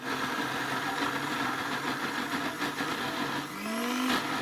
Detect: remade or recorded recorded